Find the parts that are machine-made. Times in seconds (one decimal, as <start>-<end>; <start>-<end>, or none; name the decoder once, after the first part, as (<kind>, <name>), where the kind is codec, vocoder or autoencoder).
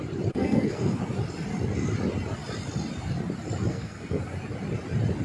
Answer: 0.4-1.0 (codec, SNAC); 3.7-4.2